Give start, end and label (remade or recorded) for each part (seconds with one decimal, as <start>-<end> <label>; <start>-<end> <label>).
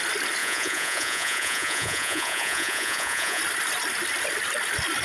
0.0-0.4 recorded; 0.4-3.4 remade; 3.4-5.0 recorded